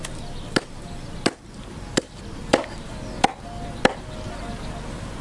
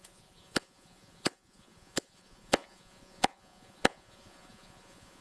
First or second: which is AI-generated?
second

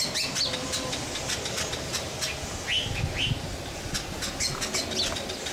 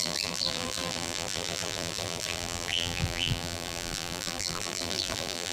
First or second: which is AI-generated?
second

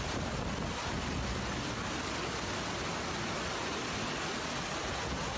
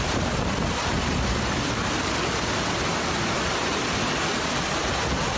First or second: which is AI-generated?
second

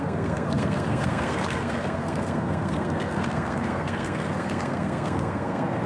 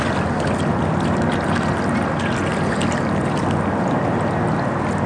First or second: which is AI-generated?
first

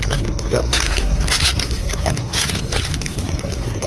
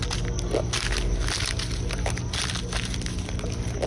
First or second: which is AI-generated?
first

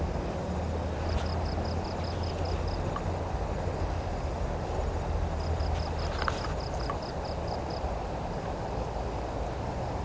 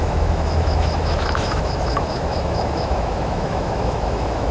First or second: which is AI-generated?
second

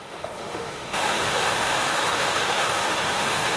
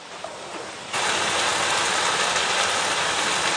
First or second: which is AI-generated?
first